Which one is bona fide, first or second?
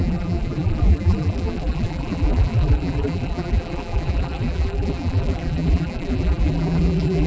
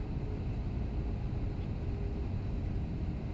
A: second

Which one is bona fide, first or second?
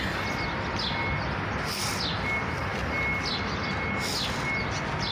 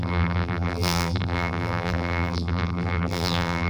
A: first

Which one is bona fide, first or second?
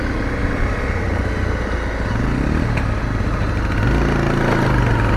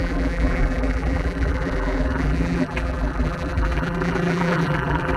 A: first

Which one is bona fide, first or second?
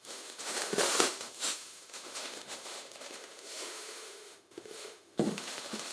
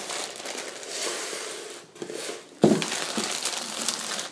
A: second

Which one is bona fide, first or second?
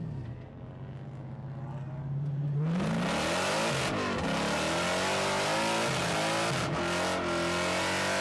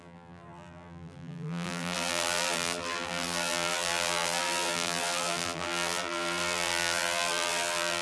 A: first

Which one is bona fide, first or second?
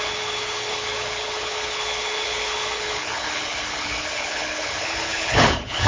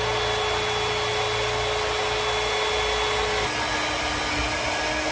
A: second